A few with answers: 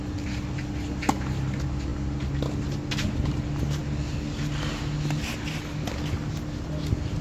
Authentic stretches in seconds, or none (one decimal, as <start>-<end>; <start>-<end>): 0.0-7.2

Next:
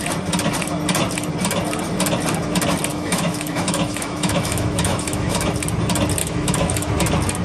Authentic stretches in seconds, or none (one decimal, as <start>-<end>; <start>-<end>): 0.0-2.9; 5.5-6.2; 6.9-7.4

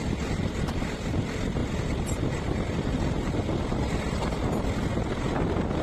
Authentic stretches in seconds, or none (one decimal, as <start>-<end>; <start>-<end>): 0.0-5.8

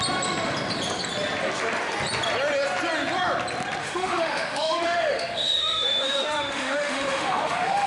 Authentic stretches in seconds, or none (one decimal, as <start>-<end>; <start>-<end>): 0.0-3.8

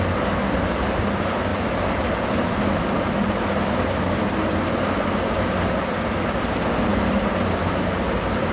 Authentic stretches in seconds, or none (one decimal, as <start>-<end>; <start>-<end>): 0.0-8.5

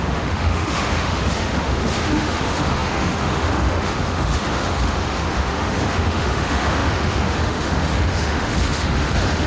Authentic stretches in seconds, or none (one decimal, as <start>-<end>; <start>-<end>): none

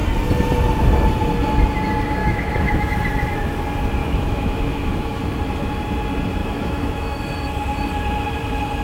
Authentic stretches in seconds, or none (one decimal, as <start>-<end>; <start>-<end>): 0.0-2.2; 2.9-4.0; 5.2-6.4; 7.2-8.8